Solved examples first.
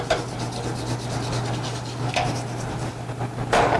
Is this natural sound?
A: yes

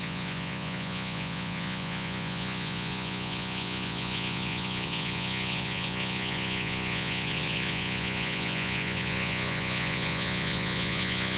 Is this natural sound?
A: no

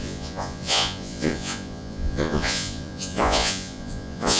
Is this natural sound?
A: no